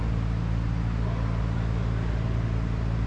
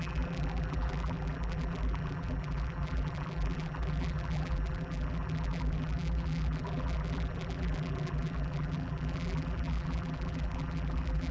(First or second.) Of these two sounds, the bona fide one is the first